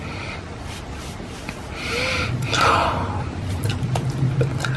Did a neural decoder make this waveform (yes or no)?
no